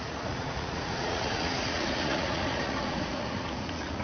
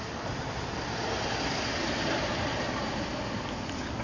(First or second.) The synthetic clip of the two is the first